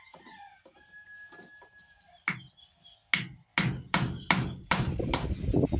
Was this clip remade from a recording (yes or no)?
no